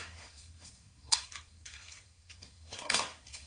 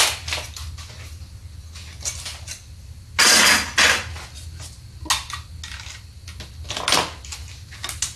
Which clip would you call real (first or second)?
second